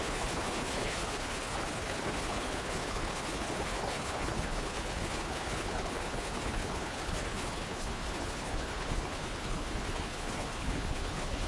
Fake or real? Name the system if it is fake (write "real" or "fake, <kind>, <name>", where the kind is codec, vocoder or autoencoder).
fake, codec, HILCodec